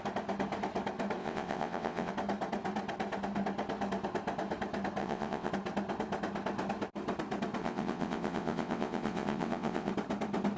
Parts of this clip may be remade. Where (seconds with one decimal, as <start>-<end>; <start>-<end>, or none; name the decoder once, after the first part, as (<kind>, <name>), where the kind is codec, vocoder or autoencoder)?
1.2-2.1 (vocoder, WaveNeXt); 5.0-5.5; 7.6-9.9